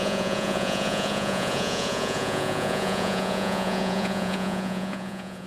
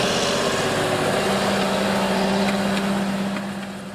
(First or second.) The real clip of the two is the second